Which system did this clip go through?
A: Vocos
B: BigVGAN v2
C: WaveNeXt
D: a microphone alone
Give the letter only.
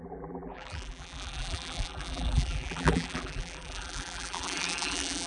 B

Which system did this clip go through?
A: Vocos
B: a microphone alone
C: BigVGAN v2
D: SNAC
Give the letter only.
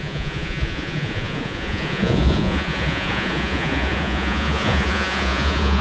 A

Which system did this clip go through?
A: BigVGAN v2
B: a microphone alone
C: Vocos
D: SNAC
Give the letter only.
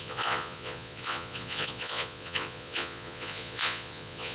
C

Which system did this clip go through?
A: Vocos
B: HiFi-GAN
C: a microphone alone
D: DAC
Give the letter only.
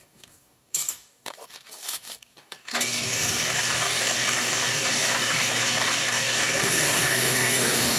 D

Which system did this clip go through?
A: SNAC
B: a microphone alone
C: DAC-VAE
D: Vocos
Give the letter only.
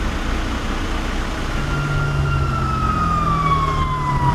B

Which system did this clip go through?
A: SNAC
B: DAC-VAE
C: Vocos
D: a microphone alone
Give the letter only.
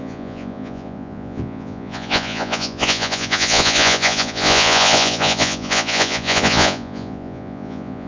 C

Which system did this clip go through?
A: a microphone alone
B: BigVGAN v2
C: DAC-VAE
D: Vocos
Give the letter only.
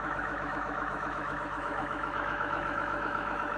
C